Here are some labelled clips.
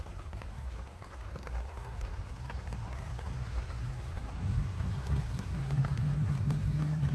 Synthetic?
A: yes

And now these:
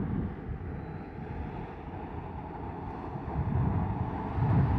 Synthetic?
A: no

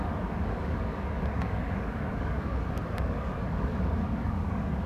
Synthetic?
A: yes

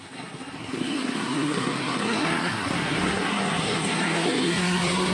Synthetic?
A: yes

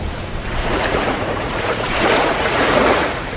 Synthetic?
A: yes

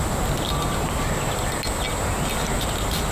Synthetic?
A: no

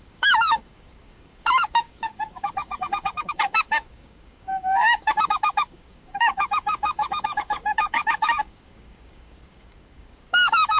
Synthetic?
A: yes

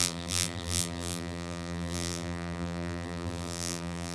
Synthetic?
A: yes